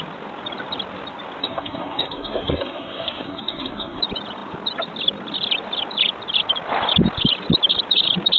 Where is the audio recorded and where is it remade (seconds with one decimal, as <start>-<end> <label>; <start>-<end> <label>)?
0.0-1.4 recorded; 1.4-4.0 remade; 4.0-8.4 recorded